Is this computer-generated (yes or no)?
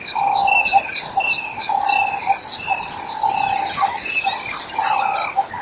no